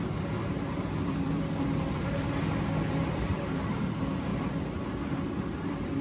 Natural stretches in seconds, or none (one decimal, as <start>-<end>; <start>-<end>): 4.3-5.0

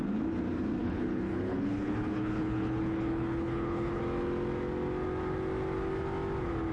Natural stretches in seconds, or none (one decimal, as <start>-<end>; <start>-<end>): 0.0-0.8; 4.0-6.7

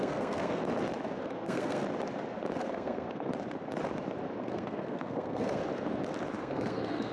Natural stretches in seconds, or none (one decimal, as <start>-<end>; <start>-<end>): 0.6-1.2; 1.8-2.6; 3.3-4.4; 5.6-6.4

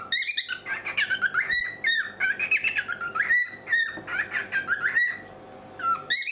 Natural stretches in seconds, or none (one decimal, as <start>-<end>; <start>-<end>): 0.0-6.3

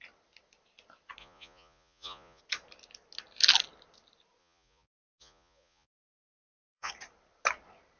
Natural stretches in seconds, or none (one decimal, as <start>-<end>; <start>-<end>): 0.0-1.2; 2.4-4.4; 6.9-8.0